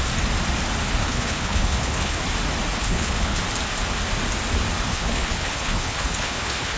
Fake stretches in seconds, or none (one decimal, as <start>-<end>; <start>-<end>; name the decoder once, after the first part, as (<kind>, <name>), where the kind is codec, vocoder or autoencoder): 1.0-2.2 (codec, HILCodec); 2.8-3.4; 4.9-6.8